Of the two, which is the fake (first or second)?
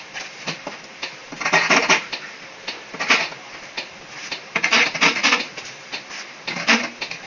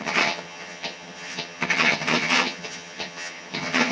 second